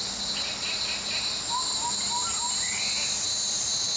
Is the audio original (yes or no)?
yes